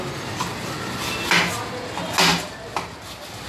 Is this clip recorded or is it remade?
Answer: recorded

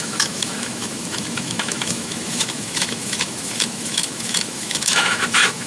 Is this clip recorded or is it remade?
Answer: remade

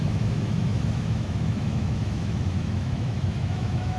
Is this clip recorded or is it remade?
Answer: remade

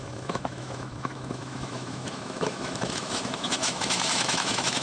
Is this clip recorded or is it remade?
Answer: remade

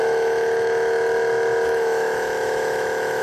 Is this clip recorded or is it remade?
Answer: remade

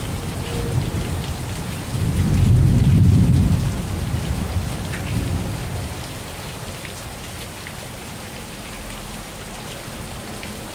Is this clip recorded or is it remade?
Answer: recorded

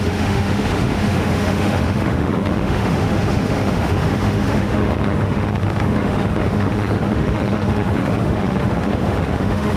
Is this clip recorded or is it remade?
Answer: remade